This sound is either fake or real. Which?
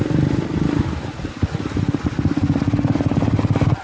real